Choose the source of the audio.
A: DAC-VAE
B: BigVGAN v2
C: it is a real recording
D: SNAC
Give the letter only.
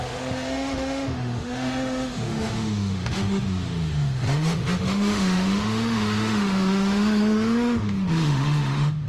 A